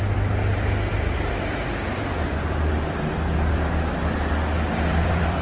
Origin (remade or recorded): remade